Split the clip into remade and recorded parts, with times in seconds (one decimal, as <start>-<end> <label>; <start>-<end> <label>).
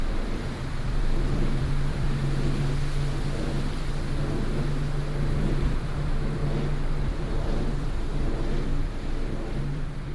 0.0-2.2 remade; 2.2-5.2 recorded; 5.2-6.4 remade; 6.4-7.0 recorded; 7.0-10.1 remade